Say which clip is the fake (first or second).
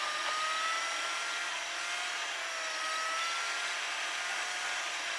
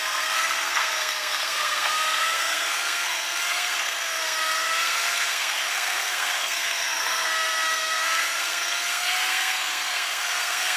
second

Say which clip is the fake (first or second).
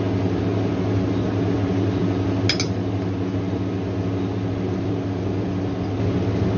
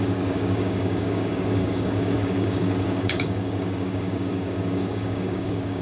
second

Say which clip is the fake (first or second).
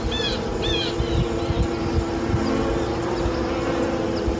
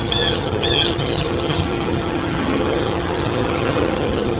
second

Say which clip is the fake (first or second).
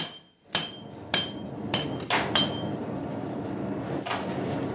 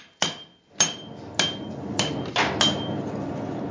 first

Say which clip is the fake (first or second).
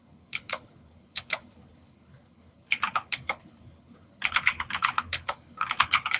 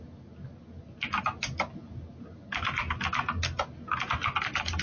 first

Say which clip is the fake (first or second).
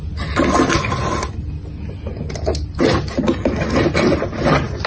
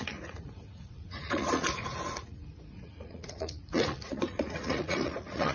second